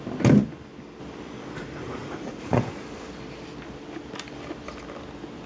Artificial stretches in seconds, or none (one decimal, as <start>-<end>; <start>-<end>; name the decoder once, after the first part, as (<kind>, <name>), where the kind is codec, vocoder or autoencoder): 2.0-2.6 (vocoder, Vocos)